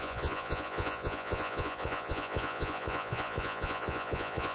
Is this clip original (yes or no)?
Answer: no